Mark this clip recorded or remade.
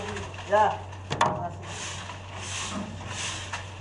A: recorded